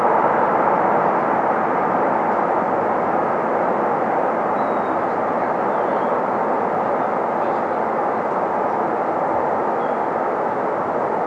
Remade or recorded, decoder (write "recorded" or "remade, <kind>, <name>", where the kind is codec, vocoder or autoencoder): recorded